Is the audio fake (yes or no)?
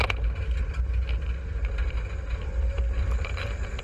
no